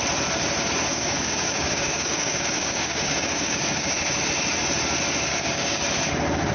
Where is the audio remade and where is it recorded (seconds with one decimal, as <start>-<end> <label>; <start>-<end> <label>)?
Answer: 0.0-0.9 recorded; 0.9-4.1 remade; 4.1-5.3 recorded; 5.3-5.8 remade; 5.8-6.5 recorded